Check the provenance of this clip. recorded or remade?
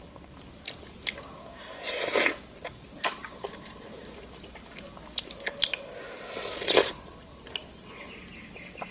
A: recorded